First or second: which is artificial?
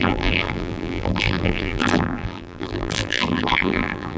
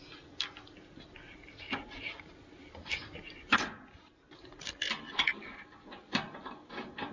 first